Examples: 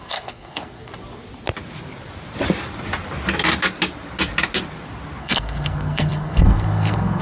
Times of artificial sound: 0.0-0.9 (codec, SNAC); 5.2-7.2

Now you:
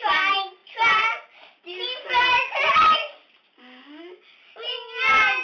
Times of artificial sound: none

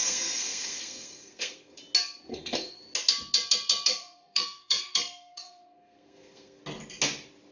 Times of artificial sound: 0.0-1.8 (codec, SNAC); 2.3-2.8; 3.9-6.6